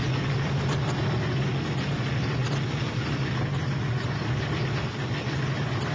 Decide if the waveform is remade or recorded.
recorded